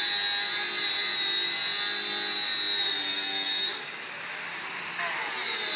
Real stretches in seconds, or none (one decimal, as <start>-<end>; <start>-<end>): 0.0-5.8